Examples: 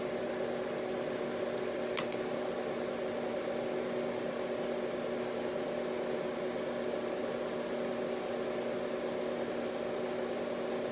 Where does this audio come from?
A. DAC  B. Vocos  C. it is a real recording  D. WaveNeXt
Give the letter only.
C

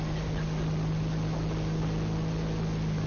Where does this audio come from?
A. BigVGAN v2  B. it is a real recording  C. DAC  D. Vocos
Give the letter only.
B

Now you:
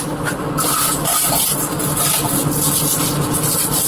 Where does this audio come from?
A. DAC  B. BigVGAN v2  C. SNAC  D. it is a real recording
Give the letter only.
D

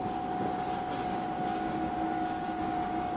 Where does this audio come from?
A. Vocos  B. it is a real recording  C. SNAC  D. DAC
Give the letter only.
D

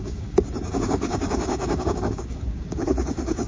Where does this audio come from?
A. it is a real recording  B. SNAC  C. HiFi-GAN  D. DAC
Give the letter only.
D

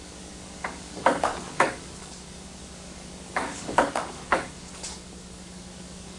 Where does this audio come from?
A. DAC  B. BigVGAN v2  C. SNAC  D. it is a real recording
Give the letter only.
A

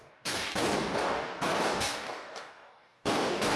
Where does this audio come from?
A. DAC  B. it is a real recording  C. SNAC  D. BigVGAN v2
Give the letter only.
A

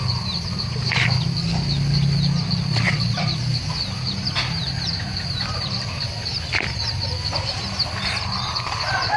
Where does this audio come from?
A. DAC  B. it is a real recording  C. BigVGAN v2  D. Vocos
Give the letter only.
B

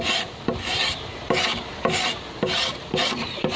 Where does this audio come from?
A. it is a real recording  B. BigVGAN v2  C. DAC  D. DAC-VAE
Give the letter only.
A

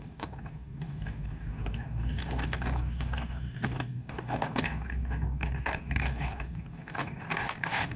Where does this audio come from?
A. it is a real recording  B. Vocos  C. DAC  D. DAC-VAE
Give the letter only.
C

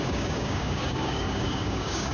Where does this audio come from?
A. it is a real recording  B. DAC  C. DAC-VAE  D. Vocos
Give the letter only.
B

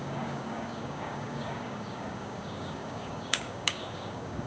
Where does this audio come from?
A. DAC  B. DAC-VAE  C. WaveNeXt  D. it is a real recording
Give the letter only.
A